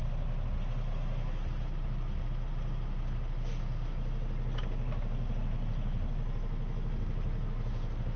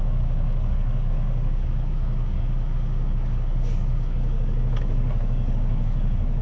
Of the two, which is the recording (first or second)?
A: first